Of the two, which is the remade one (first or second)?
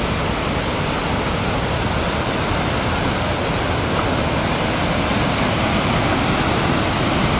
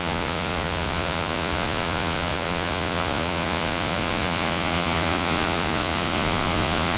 second